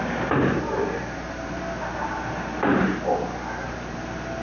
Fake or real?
real